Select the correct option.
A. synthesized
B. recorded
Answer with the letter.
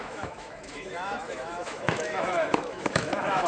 A